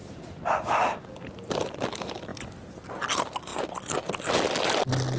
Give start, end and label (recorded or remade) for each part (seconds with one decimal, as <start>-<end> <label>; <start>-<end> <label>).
0.0-1.9 remade; 1.9-5.2 recorded